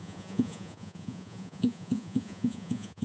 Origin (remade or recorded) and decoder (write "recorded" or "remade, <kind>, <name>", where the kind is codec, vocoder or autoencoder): remade, vocoder, Vocos